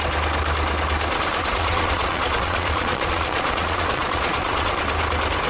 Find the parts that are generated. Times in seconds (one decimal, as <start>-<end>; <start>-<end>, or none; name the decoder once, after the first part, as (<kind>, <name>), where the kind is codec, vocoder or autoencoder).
1.5-4.8 (vocoder, Vocos)